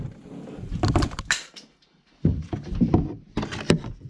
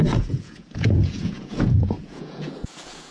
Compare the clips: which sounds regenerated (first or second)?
second